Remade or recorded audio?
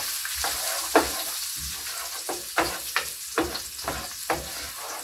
recorded